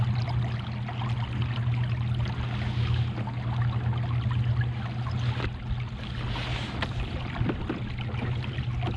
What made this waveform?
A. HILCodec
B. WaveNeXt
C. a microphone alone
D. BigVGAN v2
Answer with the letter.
C